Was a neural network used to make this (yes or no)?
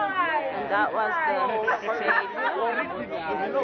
no